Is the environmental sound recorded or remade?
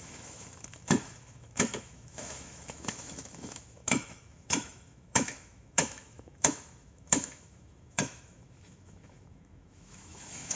remade